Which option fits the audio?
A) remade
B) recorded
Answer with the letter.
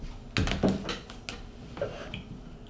B